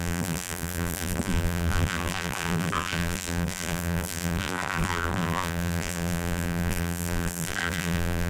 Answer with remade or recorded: remade